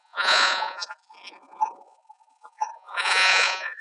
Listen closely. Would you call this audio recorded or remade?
remade